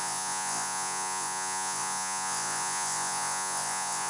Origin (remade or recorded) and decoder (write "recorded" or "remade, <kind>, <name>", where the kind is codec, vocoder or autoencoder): remade, vocoder, Vocos